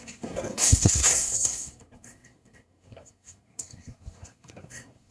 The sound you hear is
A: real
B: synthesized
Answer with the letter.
B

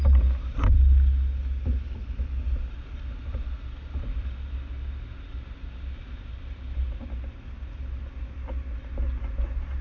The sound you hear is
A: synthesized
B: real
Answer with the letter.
B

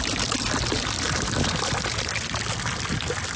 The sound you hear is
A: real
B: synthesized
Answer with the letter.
A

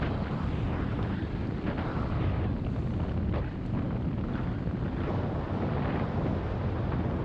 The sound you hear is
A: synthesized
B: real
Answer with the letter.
B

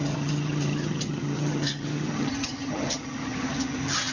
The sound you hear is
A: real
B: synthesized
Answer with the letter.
B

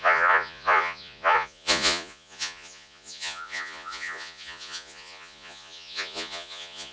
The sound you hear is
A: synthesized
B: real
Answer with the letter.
A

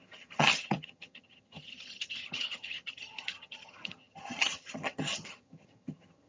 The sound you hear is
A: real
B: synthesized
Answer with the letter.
B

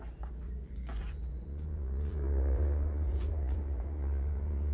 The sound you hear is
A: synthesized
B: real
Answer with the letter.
A